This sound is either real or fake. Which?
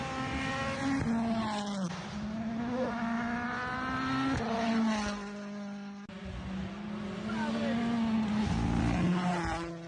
real